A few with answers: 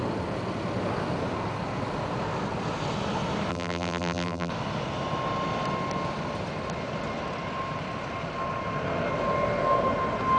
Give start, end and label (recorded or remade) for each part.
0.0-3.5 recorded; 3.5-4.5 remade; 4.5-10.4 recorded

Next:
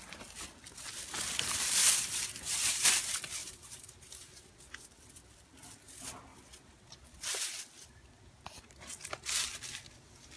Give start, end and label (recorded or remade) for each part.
0.0-1.8 recorded; 1.8-3.0 remade; 3.0-3.4 recorded; 3.4-4.4 remade; 4.4-10.4 recorded

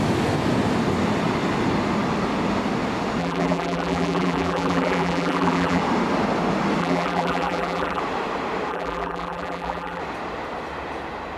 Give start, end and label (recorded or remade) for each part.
0.0-3.2 recorded; 3.2-5.8 remade; 5.8-6.8 recorded; 6.8-8.0 remade; 8.0-8.7 recorded; 8.7-10.0 remade; 10.0-11.4 recorded

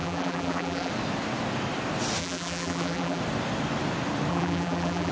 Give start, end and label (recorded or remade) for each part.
0.0-0.9 remade; 0.9-2.2 recorded; 2.2-3.2 remade; 3.2-4.3 recorded; 4.3-5.1 remade

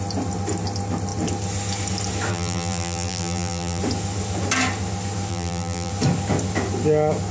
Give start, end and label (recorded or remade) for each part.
0.0-2.3 recorded; 2.3-3.8 remade; 3.8-5.3 recorded; 5.3-5.9 remade; 5.9-7.3 recorded

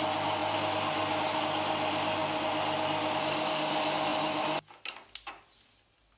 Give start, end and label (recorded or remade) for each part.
0.0-6.2 recorded

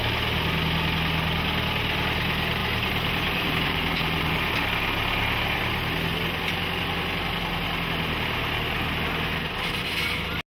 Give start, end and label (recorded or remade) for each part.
0.0-2.6 recorded; 2.6-4.5 remade; 4.5-10.6 recorded